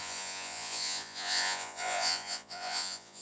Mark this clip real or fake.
fake